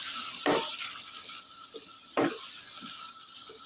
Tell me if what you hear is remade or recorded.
recorded